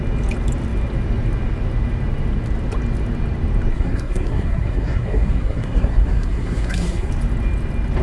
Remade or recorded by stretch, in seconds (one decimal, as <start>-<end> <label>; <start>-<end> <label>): 0.0-3.7 recorded; 3.7-7.1 remade; 7.1-8.0 recorded